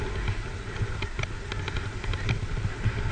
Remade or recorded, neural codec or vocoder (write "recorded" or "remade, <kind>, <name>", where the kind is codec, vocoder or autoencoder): recorded